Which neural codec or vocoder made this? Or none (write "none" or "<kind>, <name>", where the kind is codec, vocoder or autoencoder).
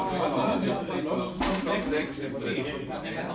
none